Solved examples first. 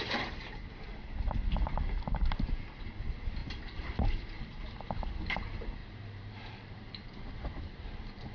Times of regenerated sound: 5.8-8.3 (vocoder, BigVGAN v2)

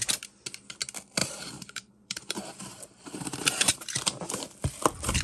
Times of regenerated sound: 1.2-4.3 (vocoder, BigVGAN v2)

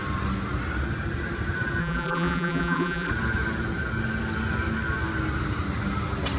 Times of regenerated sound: 1.8-3.1 (vocoder, BigVGAN v2)

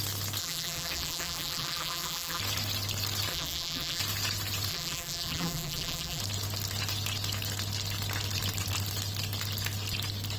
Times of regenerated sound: 0.4-2.4 (vocoder, BigVGAN v2); 3.3-4.0; 4.7-6.2

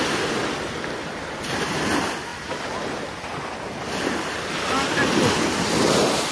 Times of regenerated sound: none

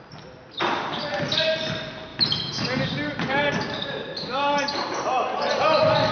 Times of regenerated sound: 2.1-5.3 (vocoder, BigVGAN v2)

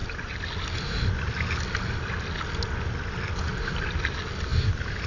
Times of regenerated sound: none

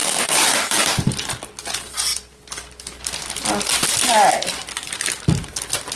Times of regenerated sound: 0.0-1.2 (vocoder, BigVGAN v2)